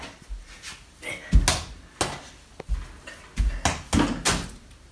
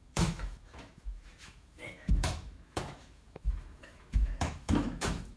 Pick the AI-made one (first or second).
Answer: second